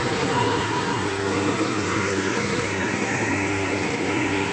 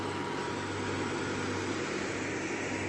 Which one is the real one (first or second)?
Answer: second